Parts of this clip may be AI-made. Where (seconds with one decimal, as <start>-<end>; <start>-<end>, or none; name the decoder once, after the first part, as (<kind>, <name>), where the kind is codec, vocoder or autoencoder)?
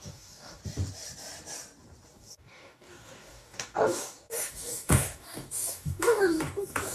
0.0-0.6 (codec, DAC); 2.1-6.9